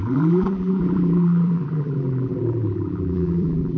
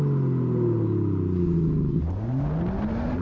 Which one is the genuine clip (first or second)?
second